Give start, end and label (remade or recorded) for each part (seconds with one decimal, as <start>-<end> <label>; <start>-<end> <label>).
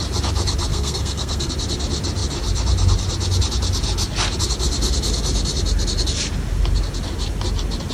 0.0-0.7 recorded; 0.7-1.5 remade; 1.5-7.9 recorded